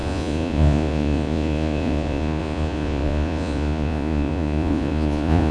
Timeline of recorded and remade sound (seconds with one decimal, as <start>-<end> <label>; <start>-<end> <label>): 0.0-5.5 remade